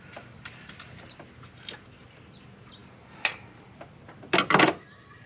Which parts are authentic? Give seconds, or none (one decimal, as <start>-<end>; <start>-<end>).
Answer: 0.0-5.3